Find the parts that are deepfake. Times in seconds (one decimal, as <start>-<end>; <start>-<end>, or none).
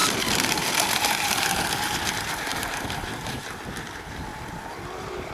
0.0-0.7; 2.5-3.1; 4.3-5.3